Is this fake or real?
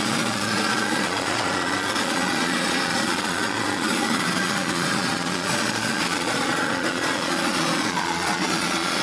fake